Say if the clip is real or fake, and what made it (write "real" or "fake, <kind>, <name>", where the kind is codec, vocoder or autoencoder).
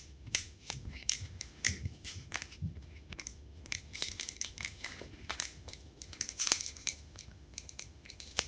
fake, autoencoder, DAC-VAE